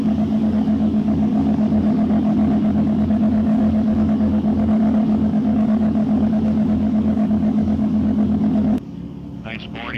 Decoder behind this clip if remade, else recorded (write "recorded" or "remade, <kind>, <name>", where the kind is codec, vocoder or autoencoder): remade, codec, DAC